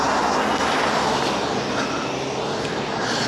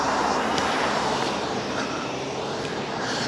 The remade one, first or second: second